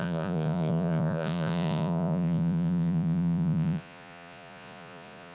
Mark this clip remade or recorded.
remade